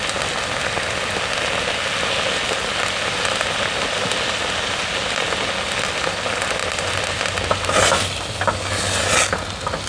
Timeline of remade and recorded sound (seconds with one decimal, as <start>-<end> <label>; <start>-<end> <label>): 0.0-9.9 recorded